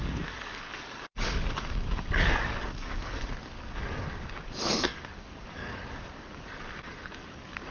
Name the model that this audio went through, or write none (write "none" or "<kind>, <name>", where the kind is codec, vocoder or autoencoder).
codec, DAC